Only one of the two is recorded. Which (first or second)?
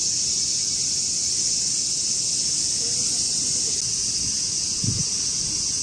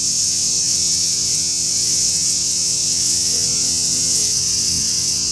first